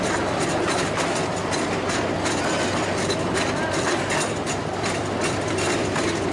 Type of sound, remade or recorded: recorded